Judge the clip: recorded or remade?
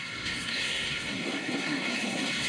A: remade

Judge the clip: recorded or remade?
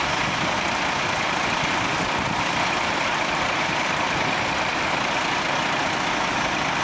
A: recorded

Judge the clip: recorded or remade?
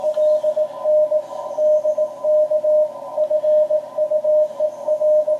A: recorded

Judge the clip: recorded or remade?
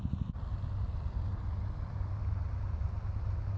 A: recorded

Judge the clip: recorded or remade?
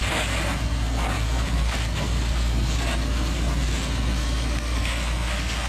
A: remade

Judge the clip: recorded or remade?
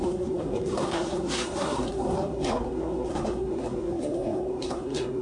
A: remade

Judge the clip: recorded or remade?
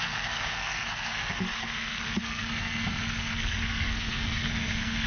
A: remade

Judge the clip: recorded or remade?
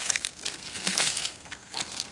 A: remade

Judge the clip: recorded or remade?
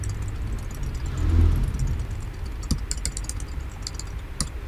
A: recorded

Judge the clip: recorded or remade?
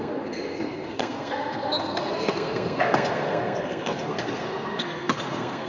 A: remade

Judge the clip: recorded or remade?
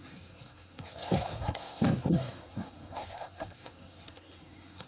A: remade